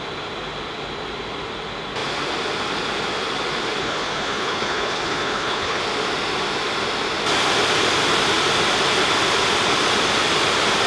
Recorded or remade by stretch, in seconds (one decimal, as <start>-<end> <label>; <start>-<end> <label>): 0.0-3.8 recorded; 3.8-5.8 remade; 5.8-10.9 recorded